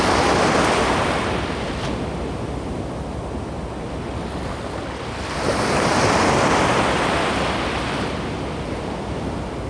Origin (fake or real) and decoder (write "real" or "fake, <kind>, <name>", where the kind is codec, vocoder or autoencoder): real